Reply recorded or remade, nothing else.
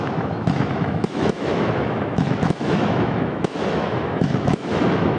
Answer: remade